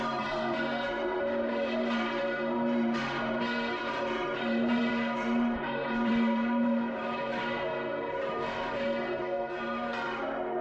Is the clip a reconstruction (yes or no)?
yes